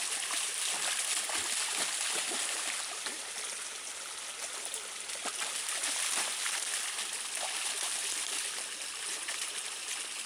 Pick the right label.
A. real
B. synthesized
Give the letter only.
A